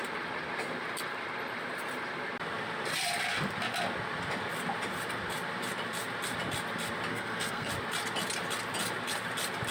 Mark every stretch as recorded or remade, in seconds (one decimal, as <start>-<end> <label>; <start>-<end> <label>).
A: 0.0-7.1 recorded; 7.1-7.7 remade; 7.7-9.7 recorded